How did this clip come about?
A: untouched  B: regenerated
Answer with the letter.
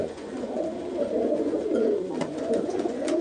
B